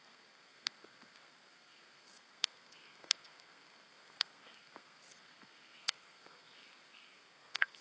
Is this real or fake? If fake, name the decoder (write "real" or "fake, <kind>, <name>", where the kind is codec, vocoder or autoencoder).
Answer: fake, codec, SNAC